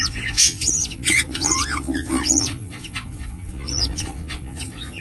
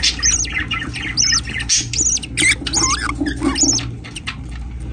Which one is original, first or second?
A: second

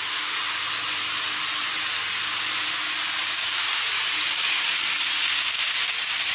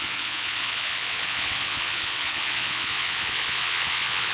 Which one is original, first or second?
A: first